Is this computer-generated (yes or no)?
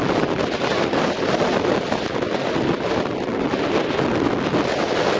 no